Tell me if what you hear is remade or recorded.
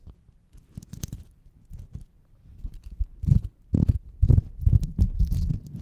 remade